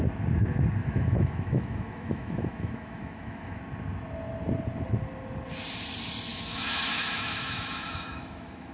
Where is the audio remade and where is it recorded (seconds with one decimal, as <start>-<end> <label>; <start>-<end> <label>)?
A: 0.0-0.8 recorded; 0.8-3.6 remade; 3.6-6.3 recorded; 6.3-8.7 remade